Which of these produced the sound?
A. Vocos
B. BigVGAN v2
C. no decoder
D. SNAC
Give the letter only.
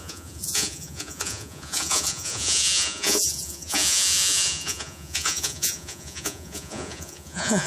A